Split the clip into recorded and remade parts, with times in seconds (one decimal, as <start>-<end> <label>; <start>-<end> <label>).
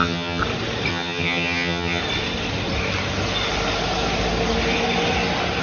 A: 0.0-0.4 remade; 0.4-0.9 recorded; 0.9-2.0 remade; 2.0-5.6 recorded